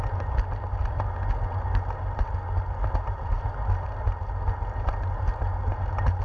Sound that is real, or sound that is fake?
real